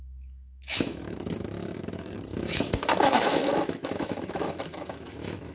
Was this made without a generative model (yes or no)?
no